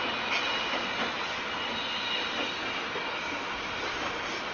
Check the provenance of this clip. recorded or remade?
recorded